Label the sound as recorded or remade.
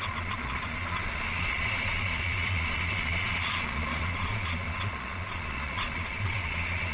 remade